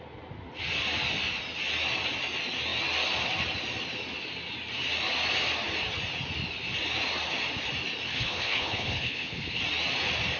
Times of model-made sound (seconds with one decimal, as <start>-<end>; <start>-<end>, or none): 8.1-9.6